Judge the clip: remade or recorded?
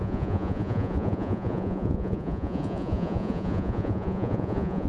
remade